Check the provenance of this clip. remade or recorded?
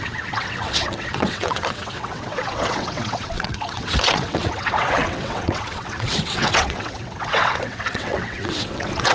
remade